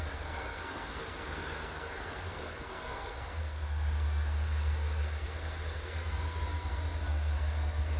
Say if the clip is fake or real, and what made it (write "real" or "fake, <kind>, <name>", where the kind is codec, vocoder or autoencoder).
fake, codec, SNAC